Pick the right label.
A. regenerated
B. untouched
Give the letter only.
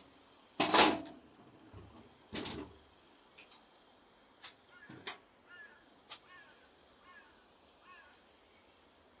B